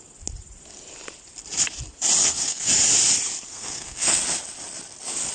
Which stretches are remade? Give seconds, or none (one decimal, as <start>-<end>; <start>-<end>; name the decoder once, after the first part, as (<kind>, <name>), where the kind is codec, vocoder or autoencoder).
2.2-2.7 (codec, SNAC); 3.5-4.2

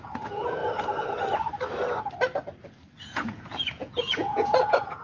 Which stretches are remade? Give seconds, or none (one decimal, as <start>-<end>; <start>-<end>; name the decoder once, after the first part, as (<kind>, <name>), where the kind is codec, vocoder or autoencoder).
0.0-0.6 (vocoder, Vocos); 3.0-5.0

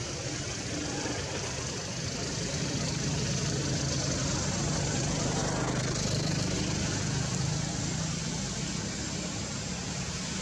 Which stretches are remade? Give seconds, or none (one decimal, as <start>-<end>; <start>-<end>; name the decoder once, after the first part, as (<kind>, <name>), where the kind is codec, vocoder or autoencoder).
none

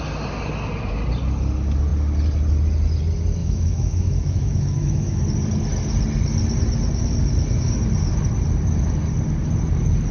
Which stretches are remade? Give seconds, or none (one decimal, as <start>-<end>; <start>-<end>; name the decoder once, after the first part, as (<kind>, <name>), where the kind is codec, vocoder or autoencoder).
3.4-5.2 (autoencoder, DAC-VAE)

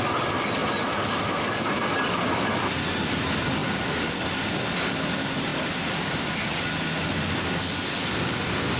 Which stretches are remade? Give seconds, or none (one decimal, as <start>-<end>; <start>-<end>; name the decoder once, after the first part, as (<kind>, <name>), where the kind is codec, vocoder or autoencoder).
0.6-1.8 (vocoder, BigVGAN v2); 3.6-4.3; 5.5-6.5

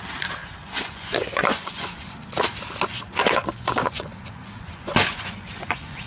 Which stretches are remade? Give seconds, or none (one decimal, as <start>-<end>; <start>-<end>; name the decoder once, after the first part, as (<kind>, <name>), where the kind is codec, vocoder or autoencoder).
0.4-2.1 (vocoder, Vocos); 2.9-6.1

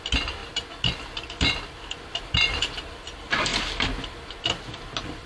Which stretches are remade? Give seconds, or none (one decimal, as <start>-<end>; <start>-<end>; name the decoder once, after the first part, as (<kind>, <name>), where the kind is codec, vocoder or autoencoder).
none

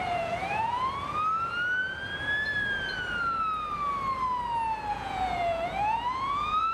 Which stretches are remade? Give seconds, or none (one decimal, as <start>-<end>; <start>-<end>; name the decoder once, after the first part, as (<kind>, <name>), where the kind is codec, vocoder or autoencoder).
0.0-0.9 (vocoder, Vocos); 4.9-6.7